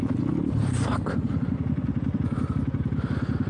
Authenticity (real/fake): real